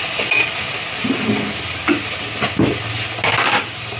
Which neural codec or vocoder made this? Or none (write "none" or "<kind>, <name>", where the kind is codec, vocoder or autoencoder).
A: none